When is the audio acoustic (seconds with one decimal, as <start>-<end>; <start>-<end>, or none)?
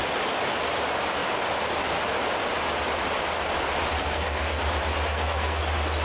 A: 0.0-4.0; 4.6-5.1; 5.6-6.0